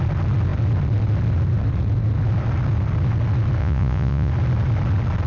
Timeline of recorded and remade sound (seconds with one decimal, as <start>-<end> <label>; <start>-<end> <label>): 0.0-3.6 recorded; 3.6-4.3 remade; 4.3-5.3 recorded